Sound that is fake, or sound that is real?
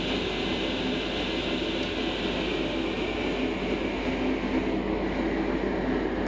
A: real